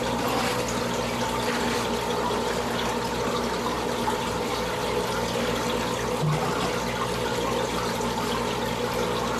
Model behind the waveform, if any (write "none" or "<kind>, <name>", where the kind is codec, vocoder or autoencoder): none